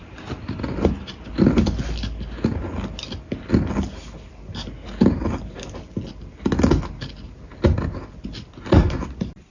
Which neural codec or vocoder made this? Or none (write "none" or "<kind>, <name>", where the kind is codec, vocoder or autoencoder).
none